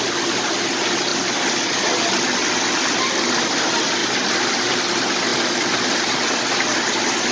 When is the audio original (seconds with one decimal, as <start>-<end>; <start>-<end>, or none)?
0.0-7.3